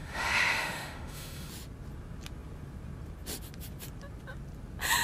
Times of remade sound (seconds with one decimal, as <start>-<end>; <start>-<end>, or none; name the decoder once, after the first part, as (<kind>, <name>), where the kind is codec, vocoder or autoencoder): 0.0-1.5 (autoencoder, DAC-VAE)